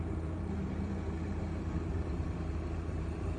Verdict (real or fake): fake